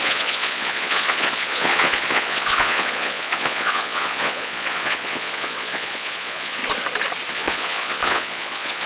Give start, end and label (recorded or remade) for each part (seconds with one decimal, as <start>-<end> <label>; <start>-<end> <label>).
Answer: 0.0-6.6 remade; 6.6-7.3 recorded; 7.3-8.9 remade